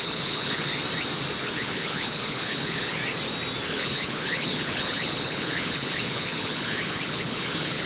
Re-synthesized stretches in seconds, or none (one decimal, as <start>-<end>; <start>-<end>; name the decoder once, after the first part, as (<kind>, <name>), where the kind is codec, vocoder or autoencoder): 0.0-0.7 (codec, HILCodec); 1.4-3.0; 3.7-7.9